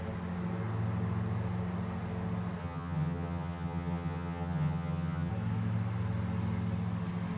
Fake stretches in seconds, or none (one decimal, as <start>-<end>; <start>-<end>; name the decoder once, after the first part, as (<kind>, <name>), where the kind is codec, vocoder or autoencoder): 2.6-5.3 (vocoder, HiFi-GAN)